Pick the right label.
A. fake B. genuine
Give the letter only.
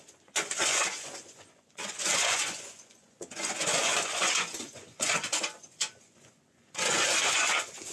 A